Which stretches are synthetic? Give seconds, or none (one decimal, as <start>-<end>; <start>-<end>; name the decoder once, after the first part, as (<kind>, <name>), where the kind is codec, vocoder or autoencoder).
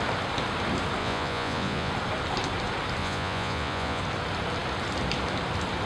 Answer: 1.0-1.9 (vocoder, Vocos); 3.0-4.0